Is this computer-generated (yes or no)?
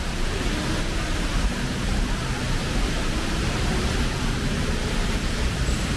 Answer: yes